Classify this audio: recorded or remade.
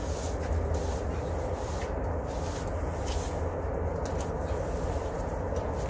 recorded